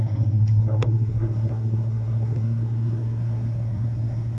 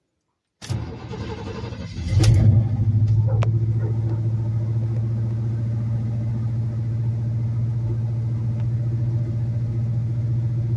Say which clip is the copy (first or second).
first